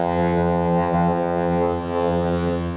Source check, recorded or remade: remade